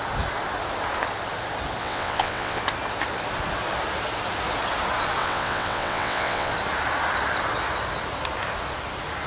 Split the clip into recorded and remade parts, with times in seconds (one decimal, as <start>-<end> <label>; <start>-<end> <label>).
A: 0.0-1.8 recorded; 1.8-2.6 remade; 2.6-5.2 recorded; 5.2-6.5 remade; 6.5-9.3 recorded